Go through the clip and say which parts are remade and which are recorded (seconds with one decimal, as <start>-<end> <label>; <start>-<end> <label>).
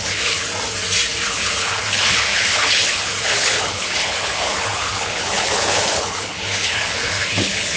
0.0-0.5 remade; 0.5-1.3 recorded; 1.3-7.8 remade